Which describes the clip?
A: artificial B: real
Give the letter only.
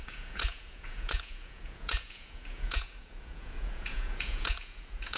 A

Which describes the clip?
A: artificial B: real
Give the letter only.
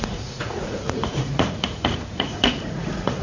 A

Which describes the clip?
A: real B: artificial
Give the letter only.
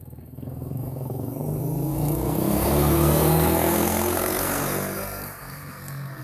B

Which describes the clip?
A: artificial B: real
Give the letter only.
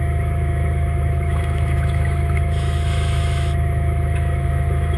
A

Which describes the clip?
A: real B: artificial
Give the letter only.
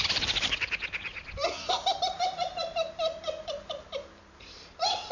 B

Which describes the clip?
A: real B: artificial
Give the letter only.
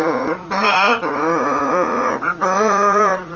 B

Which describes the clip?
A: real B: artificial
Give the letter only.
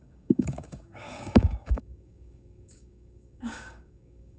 B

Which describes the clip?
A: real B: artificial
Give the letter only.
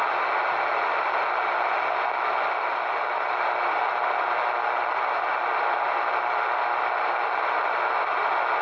A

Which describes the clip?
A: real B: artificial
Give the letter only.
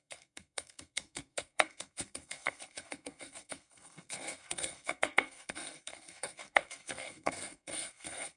B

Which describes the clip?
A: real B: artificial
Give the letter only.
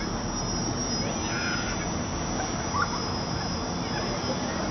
A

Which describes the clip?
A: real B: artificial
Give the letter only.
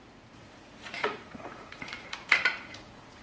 B